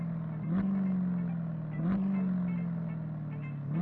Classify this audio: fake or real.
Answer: real